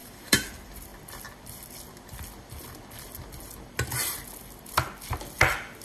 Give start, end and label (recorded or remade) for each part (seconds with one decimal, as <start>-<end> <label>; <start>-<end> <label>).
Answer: 0.0-0.5 remade; 0.5-5.8 recorded